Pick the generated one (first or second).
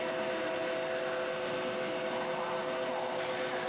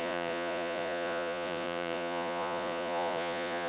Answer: second